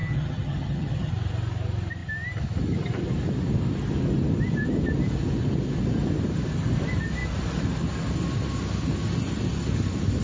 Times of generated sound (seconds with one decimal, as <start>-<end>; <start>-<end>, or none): 0.0-1.1